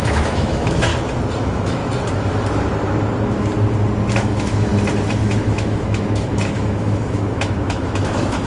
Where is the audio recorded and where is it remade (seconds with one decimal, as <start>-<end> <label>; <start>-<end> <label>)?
0.0-0.9 remade; 0.9-1.4 recorded; 1.4-1.8 remade; 1.8-4.1 recorded; 4.1-4.7 remade; 4.7-5.2 recorded; 5.2-8.5 remade